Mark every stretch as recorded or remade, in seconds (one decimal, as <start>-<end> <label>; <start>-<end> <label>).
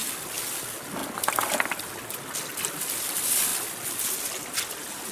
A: 0.0-5.1 recorded